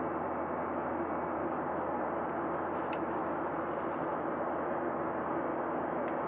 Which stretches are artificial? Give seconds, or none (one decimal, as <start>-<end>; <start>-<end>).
none